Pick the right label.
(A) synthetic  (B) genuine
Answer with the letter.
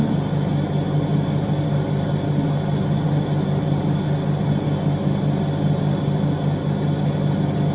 B